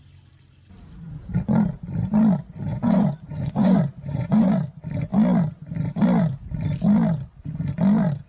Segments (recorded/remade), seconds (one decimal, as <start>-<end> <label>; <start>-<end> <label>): 0.0-2.7 recorded; 2.7-4.5 remade; 4.5-8.3 recorded